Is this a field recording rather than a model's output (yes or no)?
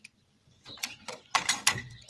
no